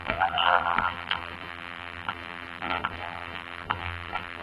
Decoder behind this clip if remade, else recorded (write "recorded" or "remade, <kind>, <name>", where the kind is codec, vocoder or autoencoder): remade, vocoder, BigVGAN v2